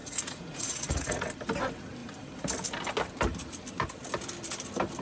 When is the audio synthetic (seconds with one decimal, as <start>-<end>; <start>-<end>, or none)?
0.0-1.3